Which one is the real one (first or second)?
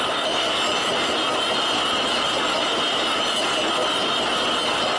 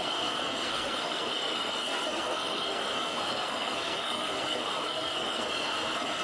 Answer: first